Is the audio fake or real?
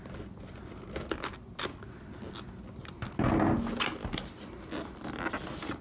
real